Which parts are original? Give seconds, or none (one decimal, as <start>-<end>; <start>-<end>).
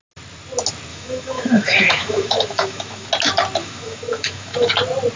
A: 0.0-0.9; 3.1-3.6; 4.7-5.2